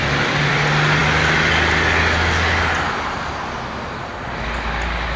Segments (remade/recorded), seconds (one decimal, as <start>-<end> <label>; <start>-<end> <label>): 0.0-0.5 remade; 0.5-5.2 recorded